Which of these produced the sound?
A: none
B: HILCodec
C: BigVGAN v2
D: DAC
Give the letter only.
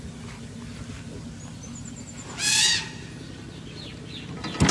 A